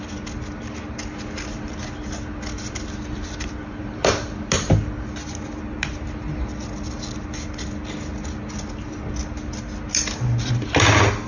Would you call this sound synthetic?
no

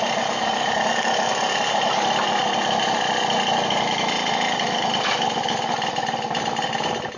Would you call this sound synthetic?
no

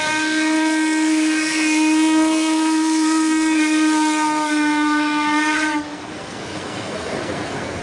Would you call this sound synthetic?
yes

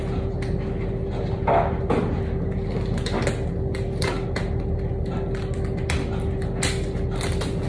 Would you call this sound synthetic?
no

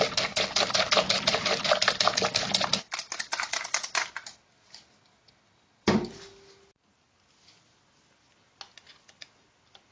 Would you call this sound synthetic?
no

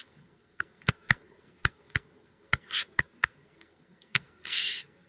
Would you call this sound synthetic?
yes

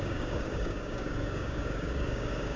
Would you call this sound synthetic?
yes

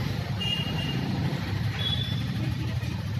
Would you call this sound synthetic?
yes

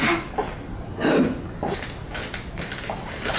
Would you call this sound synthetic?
no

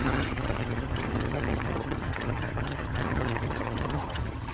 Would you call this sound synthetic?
yes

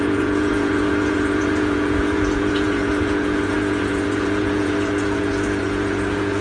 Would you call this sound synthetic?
yes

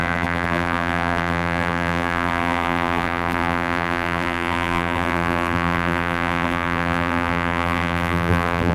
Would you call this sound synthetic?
yes